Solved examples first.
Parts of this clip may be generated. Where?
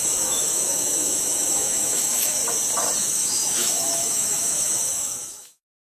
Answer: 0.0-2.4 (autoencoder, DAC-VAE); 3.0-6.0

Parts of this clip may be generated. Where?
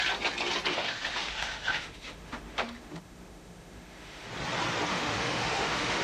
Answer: 0.7-4.3 (autoencoder, DAC-VAE); 4.9-6.0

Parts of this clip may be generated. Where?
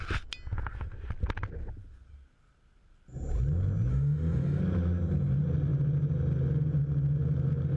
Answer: 3.9-4.6 (autoencoder, DAC-VAE)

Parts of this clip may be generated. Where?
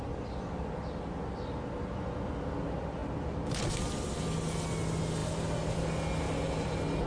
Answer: none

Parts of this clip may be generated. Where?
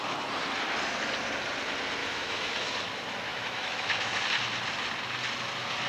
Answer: 2.0-2.7 (autoencoder, DAC-VAE); 3.3-4.2